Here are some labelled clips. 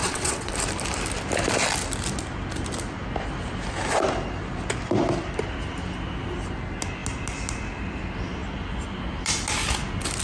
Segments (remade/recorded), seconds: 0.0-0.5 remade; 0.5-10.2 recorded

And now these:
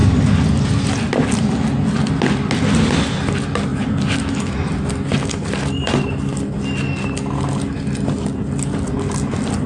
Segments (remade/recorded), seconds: 0.0-9.7 recorded

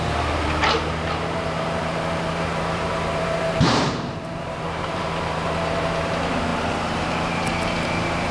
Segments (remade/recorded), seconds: 0.0-8.3 remade

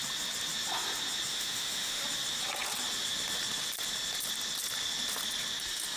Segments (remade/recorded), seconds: 0.0-1.3 recorded; 1.3-2.0 remade; 2.0-6.0 recorded

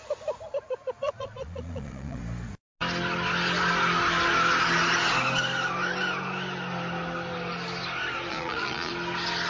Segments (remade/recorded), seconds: 0.0-1.0 recorded; 1.0-2.2 remade; 2.2-8.3 recorded; 8.3-8.9 remade; 8.9-9.5 recorded

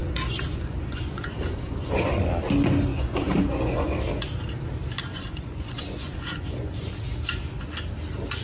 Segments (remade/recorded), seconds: 0.0-2.2 remade; 2.2-2.9 recorded; 2.9-4.0 remade; 4.0-5.1 recorded; 5.1-6.9 remade; 6.9-8.4 recorded